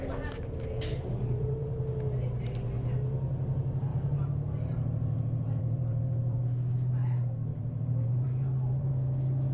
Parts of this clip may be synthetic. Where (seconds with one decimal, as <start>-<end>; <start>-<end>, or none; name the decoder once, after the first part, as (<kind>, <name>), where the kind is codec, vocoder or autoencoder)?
1.3-1.8 (vocoder, BigVGAN v2); 3.9-6.4; 7.5-8.9